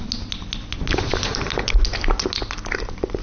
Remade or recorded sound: recorded